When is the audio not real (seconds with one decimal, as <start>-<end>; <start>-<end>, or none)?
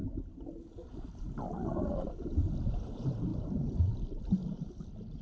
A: none